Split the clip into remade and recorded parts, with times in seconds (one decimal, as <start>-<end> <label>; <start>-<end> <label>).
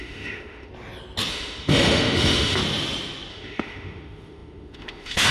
0.0-0.7 remade; 0.7-1.3 recorded; 1.3-2.6 remade; 2.6-3.3 recorded; 3.3-5.3 remade